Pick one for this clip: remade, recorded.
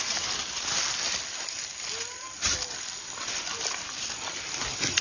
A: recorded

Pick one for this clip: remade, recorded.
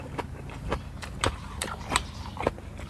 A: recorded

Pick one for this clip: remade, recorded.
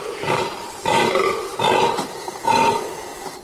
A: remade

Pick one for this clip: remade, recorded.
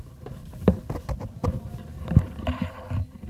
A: remade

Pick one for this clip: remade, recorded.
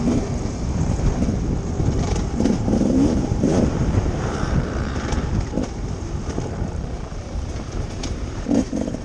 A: remade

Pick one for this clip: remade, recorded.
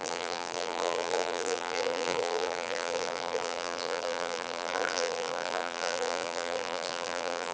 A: remade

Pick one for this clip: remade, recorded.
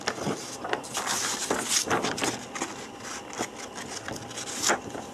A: recorded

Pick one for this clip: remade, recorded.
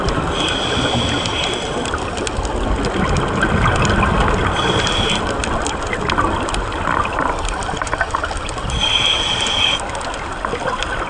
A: recorded